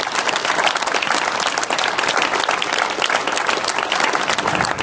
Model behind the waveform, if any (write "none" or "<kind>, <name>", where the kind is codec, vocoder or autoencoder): none